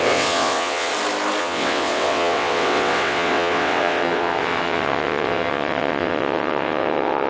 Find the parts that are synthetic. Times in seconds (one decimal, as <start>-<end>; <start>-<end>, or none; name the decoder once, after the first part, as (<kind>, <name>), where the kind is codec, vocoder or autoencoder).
0.0-0.9 (vocoder, WaveNeXt); 1.4-7.3